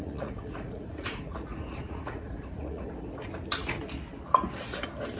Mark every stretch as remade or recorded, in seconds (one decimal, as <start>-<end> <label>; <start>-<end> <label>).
0.0-2.9 remade; 2.9-5.2 recorded